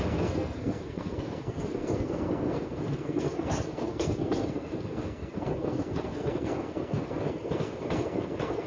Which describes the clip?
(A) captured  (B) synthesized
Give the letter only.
B